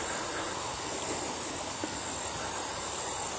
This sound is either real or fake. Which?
real